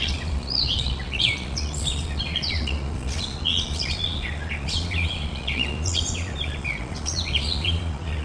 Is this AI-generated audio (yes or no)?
yes